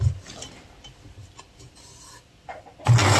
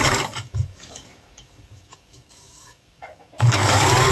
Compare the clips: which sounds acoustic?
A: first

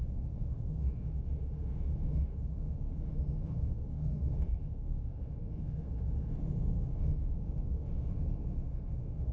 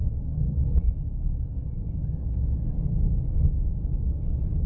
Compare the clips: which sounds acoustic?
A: second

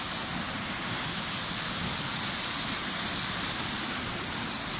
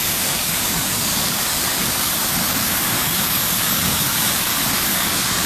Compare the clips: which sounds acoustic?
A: first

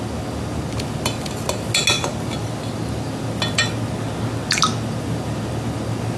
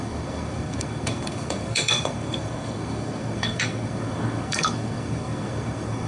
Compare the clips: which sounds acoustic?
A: first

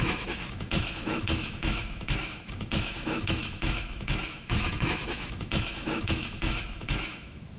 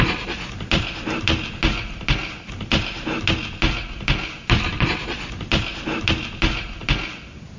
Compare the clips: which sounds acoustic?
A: second